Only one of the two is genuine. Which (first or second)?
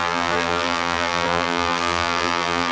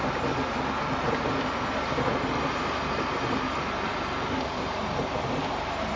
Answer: second